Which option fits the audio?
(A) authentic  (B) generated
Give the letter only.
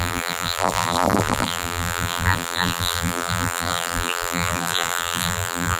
B